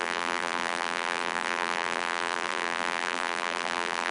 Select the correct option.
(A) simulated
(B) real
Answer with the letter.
A